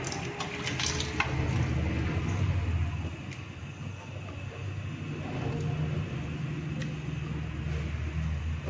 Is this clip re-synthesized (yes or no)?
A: no